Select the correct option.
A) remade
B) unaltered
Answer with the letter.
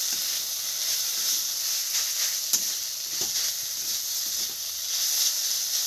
B